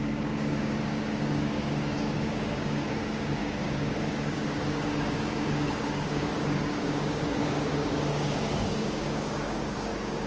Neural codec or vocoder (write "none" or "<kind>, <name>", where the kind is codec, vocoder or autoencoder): codec, DAC